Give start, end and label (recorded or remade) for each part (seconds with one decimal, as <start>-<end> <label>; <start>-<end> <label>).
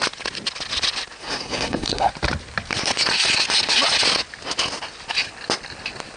0.0-1.2 recorded; 1.2-2.1 remade; 2.1-6.2 recorded